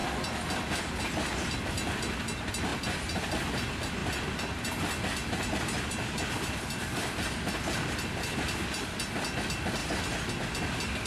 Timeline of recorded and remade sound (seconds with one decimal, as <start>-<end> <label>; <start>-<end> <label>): 0.0-11.1 recorded